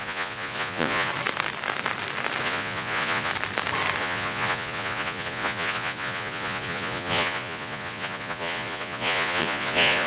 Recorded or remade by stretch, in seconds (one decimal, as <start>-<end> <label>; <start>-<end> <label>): 0.0-1.1 remade; 1.1-2.4 recorded; 2.4-3.3 remade; 3.3-4.0 recorded; 4.0-10.1 remade